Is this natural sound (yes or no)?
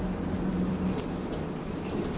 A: yes